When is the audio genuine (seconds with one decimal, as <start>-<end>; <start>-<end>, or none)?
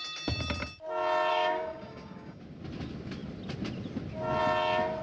0.0-1.3; 2.4-5.0